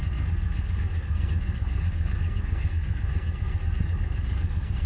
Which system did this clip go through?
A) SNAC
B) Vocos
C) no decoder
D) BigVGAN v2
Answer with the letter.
A